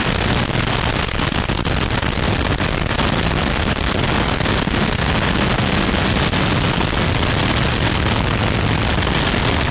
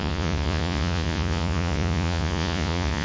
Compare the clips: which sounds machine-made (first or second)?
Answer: second